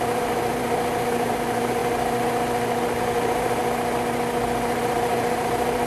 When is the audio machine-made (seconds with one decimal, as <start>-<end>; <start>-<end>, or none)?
0.0-1.8; 3.0-3.6; 4.8-5.9